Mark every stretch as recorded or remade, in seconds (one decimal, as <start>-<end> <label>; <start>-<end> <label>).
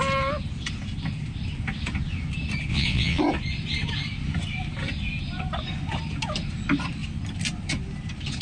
0.0-2.7 recorded; 2.7-3.2 remade; 3.2-8.4 recorded